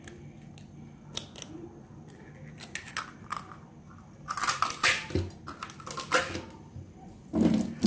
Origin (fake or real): real